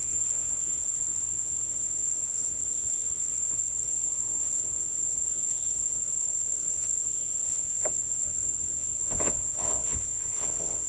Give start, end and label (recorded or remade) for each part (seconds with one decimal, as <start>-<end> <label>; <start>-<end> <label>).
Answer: 0.0-10.9 remade